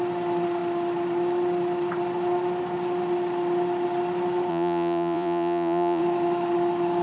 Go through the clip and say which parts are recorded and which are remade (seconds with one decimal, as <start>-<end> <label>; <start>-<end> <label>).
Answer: 0.0-4.5 recorded; 4.5-6.0 remade; 6.0-7.0 recorded